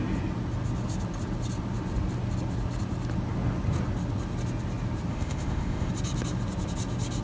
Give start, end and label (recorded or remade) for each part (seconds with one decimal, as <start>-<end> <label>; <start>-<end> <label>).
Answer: 0.0-5.1 recorded; 5.1-5.9 remade; 5.9-7.2 recorded